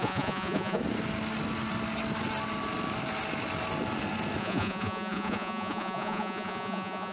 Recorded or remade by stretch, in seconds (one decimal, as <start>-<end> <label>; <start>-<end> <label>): 0.0-0.8 remade; 0.8-4.4 recorded; 4.4-7.1 remade